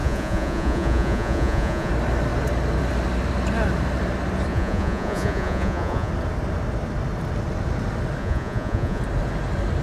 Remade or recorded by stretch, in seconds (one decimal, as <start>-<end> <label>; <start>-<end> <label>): 0.0-1.9 remade; 1.9-4.5 recorded; 4.5-6.1 remade; 6.1-8.2 recorded; 8.2-9.0 remade; 9.0-9.8 recorded